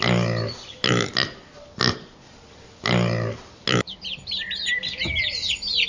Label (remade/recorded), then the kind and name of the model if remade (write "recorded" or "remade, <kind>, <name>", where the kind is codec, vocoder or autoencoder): recorded